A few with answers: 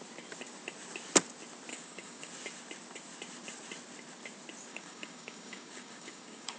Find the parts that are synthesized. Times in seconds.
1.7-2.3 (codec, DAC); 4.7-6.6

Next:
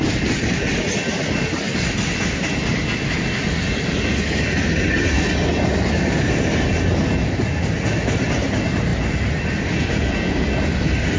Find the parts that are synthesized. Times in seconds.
none

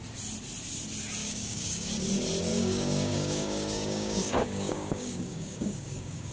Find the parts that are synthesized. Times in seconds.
1.2-1.9 (codec, DAC); 2.5-6.3

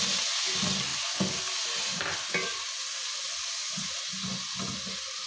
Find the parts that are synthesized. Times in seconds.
none

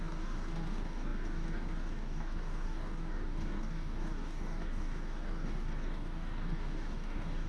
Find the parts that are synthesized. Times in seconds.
0.0-7.5 (codec, DAC)